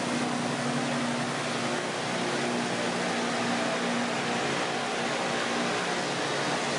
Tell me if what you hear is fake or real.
real